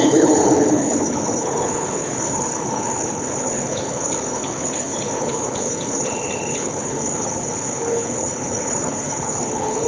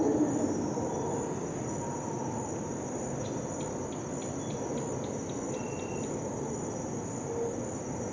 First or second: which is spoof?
first